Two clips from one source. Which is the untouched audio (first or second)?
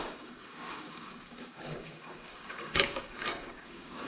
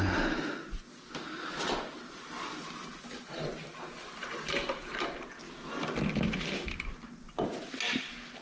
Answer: second